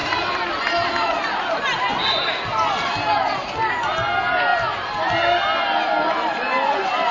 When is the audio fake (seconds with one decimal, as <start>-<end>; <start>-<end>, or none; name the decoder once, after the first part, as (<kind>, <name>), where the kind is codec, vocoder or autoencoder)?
0.0-3.7 (vocoder, BigVGAN v2)